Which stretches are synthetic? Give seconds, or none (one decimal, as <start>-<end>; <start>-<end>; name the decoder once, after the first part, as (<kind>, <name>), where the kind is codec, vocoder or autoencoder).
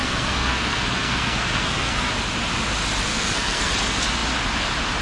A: 0.0-2.1 (codec, SNAC); 3.1-3.7